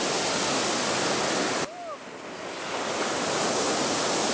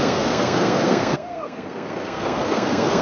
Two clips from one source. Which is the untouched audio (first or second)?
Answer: first